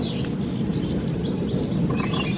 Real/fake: real